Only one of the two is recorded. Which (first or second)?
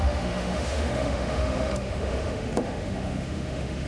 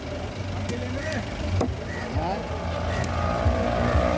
second